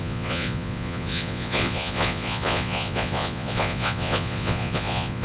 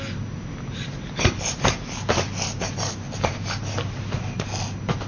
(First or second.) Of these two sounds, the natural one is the second